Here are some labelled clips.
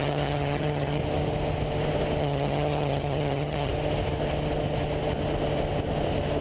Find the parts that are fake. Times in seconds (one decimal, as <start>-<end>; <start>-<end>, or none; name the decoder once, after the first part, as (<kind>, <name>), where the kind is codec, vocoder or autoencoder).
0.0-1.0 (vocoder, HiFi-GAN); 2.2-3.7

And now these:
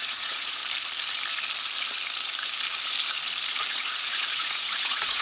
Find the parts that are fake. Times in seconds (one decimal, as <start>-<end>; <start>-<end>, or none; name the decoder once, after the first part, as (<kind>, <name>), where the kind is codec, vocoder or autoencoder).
0.0-0.6 (vocoder, Vocos); 3.7-5.2

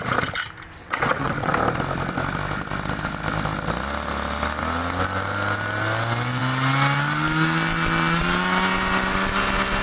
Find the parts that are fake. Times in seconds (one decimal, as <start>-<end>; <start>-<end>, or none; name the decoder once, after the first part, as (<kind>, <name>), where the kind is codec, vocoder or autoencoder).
0.8-1.5 (vocoder, WaveNeXt)

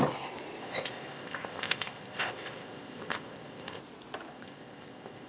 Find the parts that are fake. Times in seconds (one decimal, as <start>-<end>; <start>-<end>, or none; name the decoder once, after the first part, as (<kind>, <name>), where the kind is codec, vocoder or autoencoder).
0.6-3.8 (codec, ZipCodec); 4.3-5.3